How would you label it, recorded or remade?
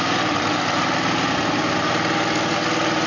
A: recorded